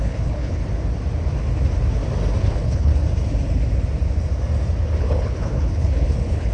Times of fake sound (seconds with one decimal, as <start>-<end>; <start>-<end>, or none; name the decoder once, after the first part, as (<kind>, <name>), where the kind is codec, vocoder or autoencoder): 0.0-0.6 (codec, HILCodec); 2.4-2.9; 5.0-6.5